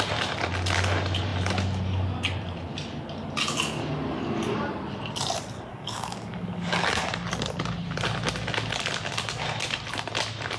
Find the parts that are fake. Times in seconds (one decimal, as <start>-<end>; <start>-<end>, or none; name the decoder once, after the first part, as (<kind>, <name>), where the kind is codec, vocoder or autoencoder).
5.7-7.0 (codec, DAC)